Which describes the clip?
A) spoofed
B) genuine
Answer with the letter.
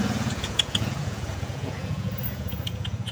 A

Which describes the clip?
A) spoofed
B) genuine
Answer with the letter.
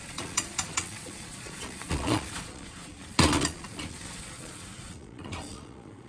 A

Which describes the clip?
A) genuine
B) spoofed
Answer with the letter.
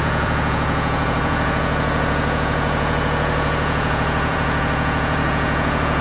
B